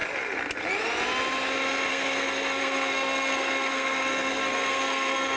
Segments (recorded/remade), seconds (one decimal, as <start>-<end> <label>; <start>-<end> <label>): 0.0-1.9 recorded; 1.9-5.4 remade